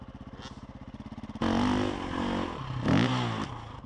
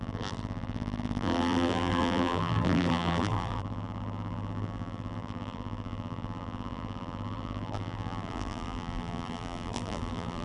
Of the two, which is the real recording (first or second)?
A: first